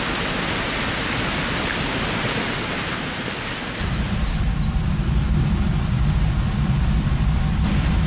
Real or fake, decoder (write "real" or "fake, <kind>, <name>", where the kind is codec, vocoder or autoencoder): real